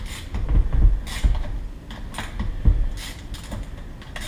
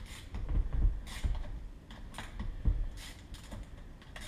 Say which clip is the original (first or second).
first